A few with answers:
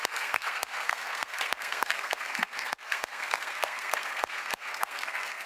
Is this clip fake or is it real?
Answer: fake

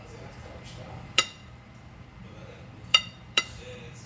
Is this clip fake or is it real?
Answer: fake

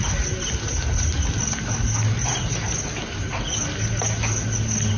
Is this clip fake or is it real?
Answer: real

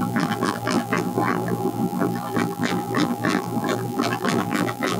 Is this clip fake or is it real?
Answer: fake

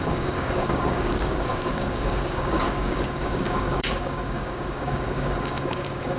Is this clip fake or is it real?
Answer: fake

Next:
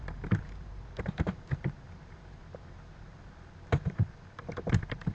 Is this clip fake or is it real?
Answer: fake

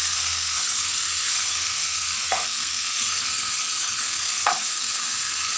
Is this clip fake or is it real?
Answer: fake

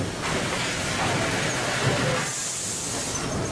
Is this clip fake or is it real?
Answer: real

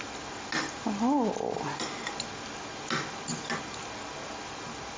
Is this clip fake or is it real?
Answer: real